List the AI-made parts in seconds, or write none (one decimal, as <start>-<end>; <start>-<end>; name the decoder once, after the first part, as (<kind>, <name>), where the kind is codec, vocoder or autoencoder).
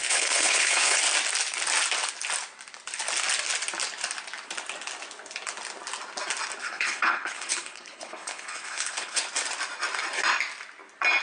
0.0-1.0 (codec, HILCodec); 6.6-9.2